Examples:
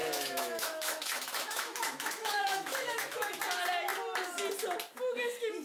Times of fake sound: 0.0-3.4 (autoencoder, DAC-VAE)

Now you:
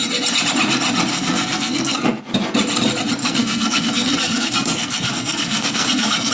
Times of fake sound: 1.1-2.2 (codec, SNAC); 3.2-6.3

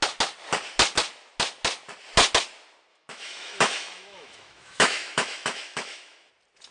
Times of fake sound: 2.9-6.3 (autoencoder, DAC-VAE)

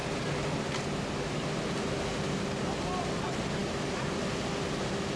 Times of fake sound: none

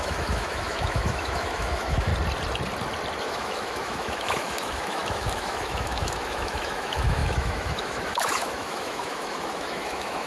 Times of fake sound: 0.0-2.1 (autoencoder, DAC-VAE); 3.2-10.3